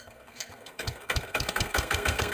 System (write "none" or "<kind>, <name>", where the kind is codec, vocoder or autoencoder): codec, SNAC